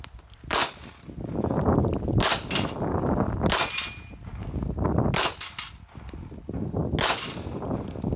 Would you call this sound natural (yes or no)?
yes